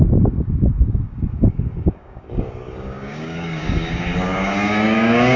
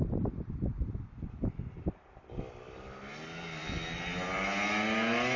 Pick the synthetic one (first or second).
first